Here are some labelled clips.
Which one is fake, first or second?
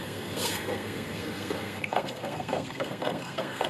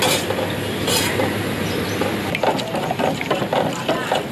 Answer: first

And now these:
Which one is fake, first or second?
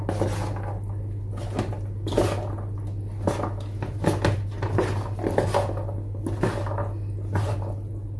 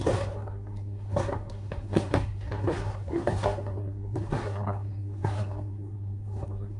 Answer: second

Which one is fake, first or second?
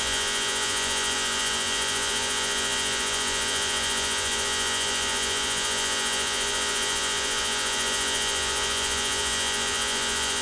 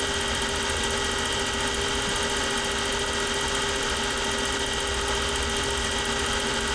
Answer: first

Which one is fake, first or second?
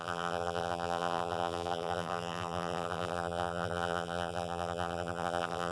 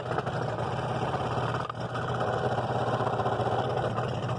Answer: first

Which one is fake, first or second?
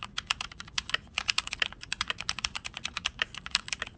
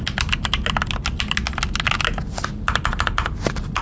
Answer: first